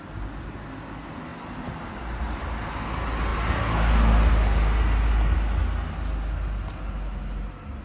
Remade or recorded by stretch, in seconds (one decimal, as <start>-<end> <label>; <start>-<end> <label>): 0.0-1.3 recorded; 1.3-2.4 remade; 2.4-7.8 recorded

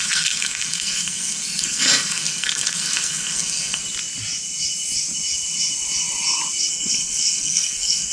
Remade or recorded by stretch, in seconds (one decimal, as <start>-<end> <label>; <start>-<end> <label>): 0.0-3.8 remade; 3.8-6.7 recorded; 6.7-8.1 remade